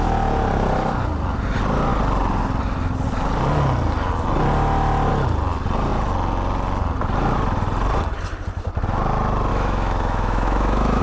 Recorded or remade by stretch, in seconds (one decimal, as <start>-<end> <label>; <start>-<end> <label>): 0.0-9.5 recorded; 9.5-11.0 remade

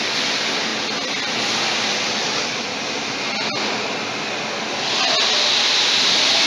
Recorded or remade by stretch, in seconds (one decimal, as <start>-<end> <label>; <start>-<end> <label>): 0.0-6.5 recorded

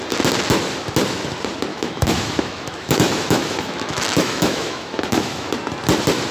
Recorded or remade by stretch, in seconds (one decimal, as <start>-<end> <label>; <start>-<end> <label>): 0.0-1.7 recorded; 1.7-5.5 remade; 5.5-6.3 recorded

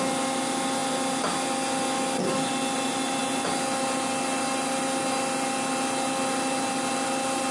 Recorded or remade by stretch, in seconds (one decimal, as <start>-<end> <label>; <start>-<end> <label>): 0.0-7.5 recorded

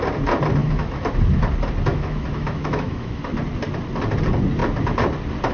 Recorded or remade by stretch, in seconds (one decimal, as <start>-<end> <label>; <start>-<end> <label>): 0.0-0.6 recorded; 0.6-1.1 remade; 1.1-1.9 recorded; 1.9-3.2 remade; 3.2-5.5 recorded

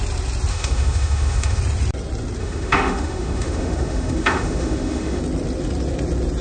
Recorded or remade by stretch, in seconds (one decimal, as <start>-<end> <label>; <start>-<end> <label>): 0.0-0.5 recorded; 0.5-1.6 remade; 1.6-2.4 recorded; 2.4-5.2 remade; 5.2-6.4 recorded

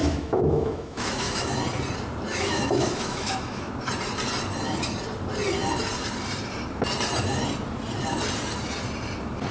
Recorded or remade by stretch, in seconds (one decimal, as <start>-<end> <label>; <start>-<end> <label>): 0.0-1.6 remade; 1.6-2.3 recorded; 2.3-3.7 remade; 3.7-9.5 recorded